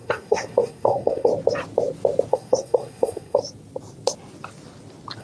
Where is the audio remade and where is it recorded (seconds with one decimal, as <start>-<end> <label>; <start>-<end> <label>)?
0.0-1.3 remade; 1.3-2.3 recorded; 2.3-3.4 remade; 3.4-5.2 recorded